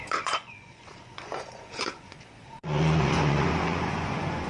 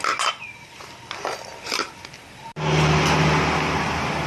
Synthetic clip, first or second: first